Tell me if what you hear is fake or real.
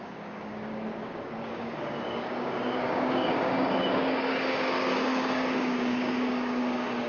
fake